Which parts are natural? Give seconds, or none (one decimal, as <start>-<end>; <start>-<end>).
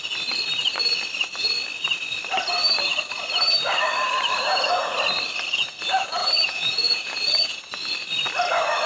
0.0-6.2; 7.6-8.9